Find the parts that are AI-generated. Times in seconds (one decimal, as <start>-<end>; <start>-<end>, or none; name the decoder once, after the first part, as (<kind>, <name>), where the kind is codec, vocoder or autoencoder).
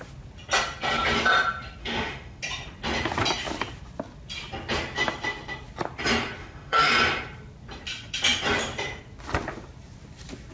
1.8-2.4 (autoencoder, DAC-VAE); 6.4-6.9